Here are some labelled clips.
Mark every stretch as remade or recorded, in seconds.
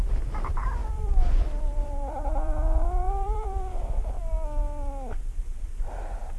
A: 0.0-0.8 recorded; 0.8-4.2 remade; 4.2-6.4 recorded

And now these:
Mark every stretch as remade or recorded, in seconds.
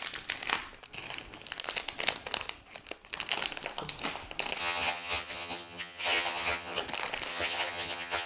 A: 0.0-4.6 recorded; 4.6-6.8 remade; 6.8-7.3 recorded; 7.3-8.3 remade